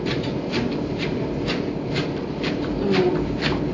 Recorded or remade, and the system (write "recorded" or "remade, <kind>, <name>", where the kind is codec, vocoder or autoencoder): remade, vocoder, BigVGAN v2